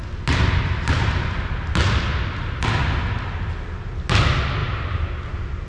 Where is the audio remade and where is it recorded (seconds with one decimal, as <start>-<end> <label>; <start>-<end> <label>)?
0.0-4.6 recorded; 4.6-5.2 remade; 5.2-5.7 recorded